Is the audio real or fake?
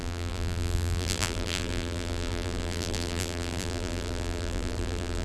fake